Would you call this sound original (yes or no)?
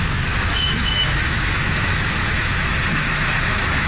no